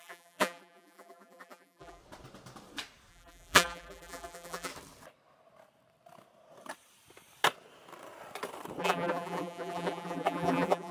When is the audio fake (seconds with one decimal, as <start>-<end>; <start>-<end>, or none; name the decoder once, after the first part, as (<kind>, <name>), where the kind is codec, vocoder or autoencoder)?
0.0-2.0 (vocoder, BigVGAN v2); 3.1-4.7; 8.8-10.9